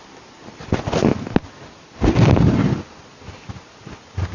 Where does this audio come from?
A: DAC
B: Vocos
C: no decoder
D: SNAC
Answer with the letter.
C